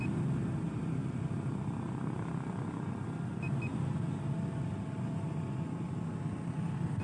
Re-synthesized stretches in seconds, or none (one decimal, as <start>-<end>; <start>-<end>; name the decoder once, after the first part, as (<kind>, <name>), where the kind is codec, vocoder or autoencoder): none